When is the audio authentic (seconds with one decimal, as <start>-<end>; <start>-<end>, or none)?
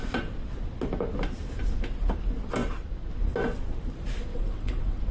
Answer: 0.0-4.3